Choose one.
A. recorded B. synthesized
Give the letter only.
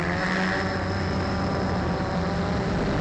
A